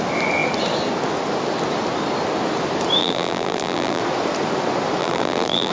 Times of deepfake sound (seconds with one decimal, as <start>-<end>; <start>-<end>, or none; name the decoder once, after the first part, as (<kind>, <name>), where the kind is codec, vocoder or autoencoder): 3.0-4.0 (vocoder, BigVGAN v2); 5.0-5.7